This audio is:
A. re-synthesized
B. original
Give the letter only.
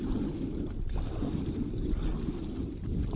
B